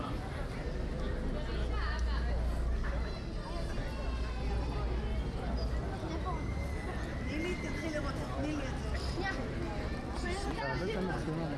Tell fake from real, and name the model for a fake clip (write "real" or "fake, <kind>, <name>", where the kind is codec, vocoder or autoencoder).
real